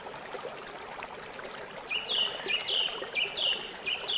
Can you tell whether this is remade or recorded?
recorded